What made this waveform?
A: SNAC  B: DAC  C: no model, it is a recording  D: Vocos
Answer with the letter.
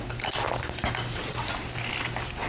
C